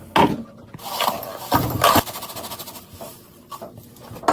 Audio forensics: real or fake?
real